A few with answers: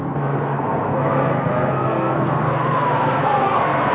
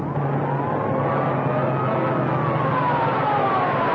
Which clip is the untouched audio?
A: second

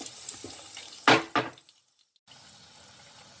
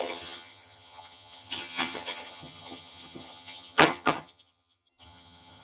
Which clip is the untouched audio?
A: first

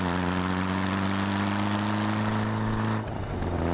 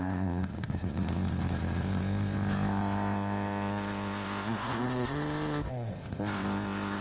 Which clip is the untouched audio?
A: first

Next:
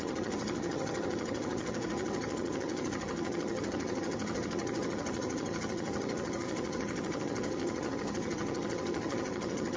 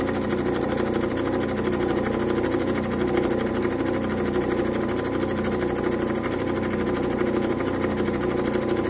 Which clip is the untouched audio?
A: second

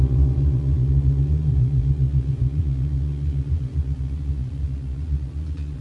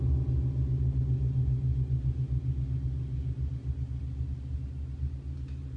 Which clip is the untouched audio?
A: second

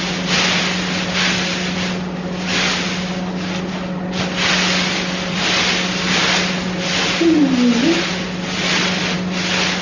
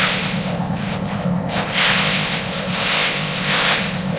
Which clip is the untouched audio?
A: first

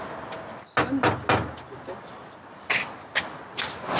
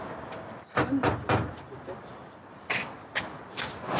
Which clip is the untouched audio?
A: first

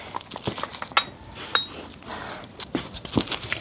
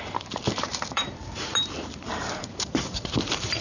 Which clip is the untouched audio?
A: first